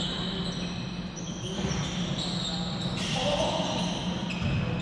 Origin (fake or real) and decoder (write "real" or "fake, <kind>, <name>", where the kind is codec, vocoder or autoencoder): real